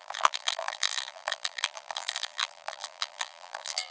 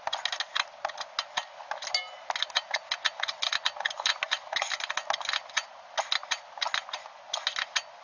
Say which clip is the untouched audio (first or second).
second